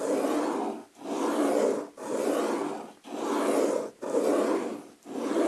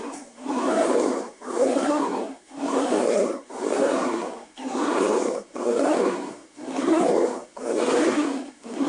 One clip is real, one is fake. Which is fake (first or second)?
second